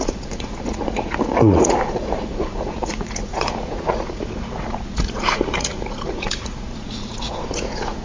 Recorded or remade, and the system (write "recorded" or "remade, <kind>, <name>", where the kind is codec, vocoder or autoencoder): remade, vocoder, Vocos